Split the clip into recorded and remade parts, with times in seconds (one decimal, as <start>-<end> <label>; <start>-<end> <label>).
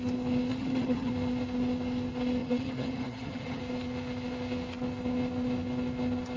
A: 0.0-0.5 recorded; 0.5-1.1 remade; 1.1-2.4 recorded; 2.4-3.6 remade; 3.6-6.4 recorded